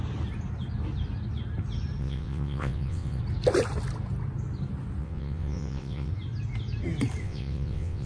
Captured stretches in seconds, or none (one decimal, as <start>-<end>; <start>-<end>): 0.0-2.0; 3.2-5.0; 6.1-7.2